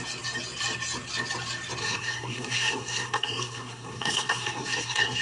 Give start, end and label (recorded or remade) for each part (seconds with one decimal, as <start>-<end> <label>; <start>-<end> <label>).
0.0-1.8 recorded; 1.8-5.2 remade